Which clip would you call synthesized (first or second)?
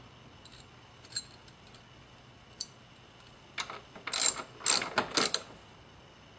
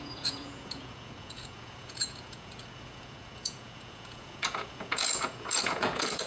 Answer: second